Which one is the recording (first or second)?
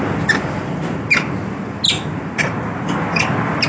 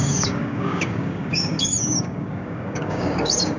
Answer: first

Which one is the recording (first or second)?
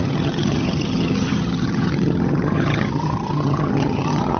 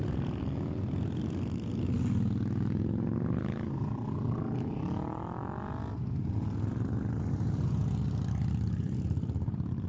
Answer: second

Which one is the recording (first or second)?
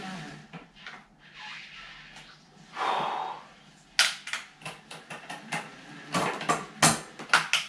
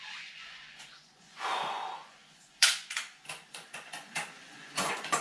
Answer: first